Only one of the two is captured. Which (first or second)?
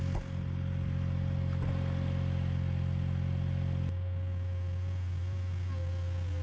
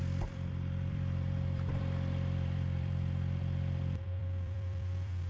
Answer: first